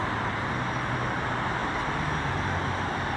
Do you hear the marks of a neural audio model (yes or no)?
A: no